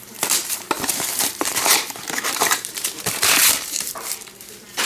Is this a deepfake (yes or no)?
yes